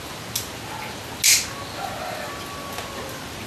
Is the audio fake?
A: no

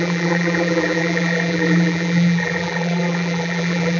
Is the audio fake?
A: yes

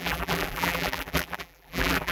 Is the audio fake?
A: yes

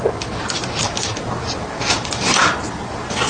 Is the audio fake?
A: yes